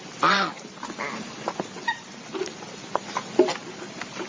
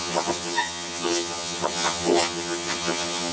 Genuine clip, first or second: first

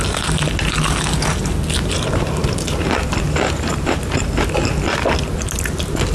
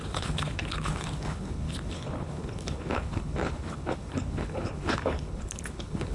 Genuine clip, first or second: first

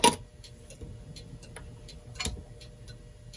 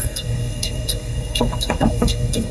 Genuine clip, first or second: first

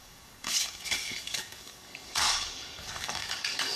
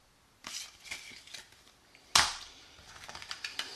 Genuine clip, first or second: second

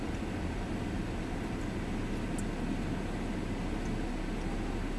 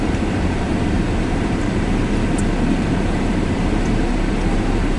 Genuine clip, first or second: first